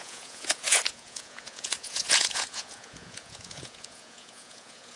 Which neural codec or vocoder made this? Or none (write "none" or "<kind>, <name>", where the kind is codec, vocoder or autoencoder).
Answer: vocoder, Vocos